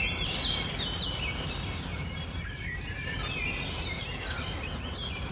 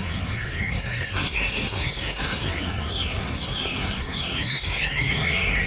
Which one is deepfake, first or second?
second